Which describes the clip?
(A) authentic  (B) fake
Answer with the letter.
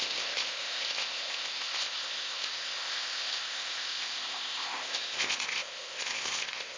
B